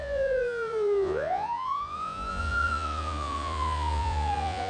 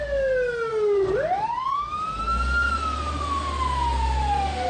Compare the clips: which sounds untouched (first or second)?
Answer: second